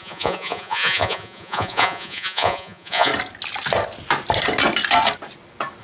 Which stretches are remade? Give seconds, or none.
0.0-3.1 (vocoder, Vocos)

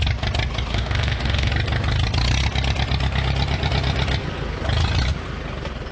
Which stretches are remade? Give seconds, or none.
0.7-1.5 (autoencoder, DAC-VAE)

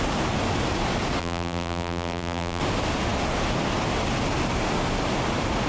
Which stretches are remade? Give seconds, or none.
1.2-2.6 (vocoder, BigVGAN v2)

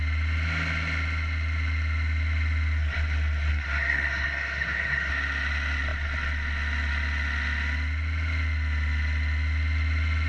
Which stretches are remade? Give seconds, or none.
3.5-5.1 (codec, SNAC)

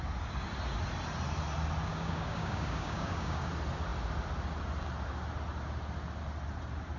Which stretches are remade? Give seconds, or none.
1.9-3.5 (codec, DAC)

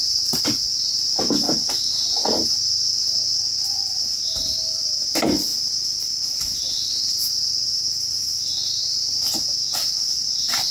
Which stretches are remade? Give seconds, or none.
none